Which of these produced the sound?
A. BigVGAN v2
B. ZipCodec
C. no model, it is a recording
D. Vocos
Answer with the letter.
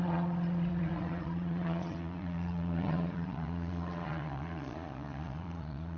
D